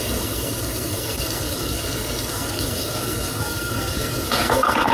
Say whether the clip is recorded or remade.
remade